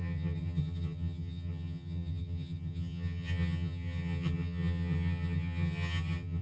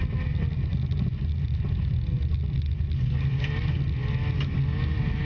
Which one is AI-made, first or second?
first